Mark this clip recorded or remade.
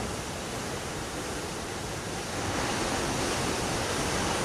remade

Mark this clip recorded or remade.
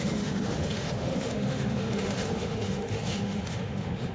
remade